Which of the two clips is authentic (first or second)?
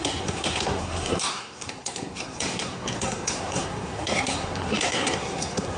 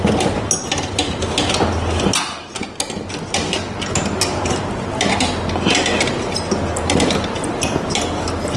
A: second